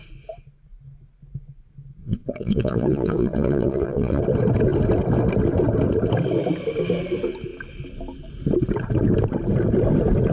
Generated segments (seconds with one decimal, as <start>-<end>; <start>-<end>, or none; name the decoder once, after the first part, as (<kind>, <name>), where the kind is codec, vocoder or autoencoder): 2.0-4.2 (vocoder, WaveNeXt)